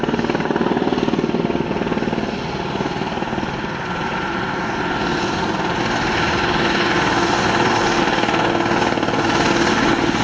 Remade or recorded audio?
recorded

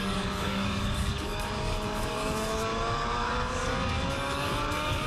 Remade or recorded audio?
remade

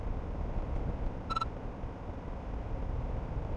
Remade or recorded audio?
recorded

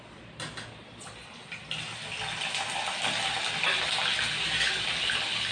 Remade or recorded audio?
recorded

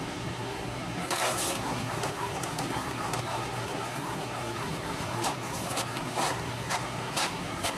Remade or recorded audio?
remade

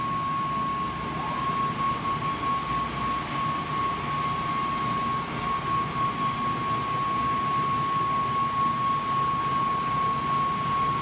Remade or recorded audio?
recorded